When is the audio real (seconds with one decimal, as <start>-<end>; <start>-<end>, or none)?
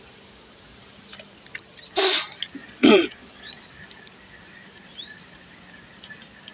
0.0-2.6; 3.6-6.5